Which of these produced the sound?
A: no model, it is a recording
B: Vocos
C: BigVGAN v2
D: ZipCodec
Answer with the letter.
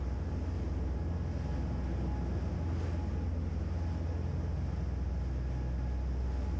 A